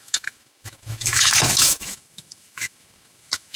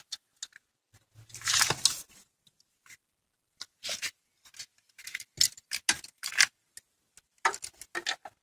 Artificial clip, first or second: first